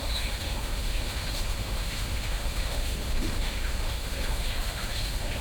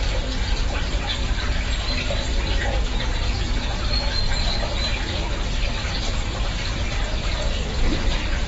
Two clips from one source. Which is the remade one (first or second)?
first